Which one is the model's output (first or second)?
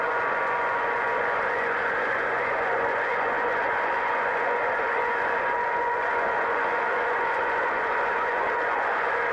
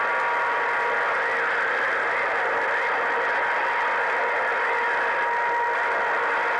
first